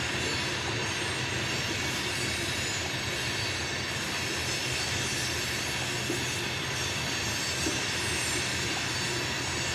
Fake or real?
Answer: real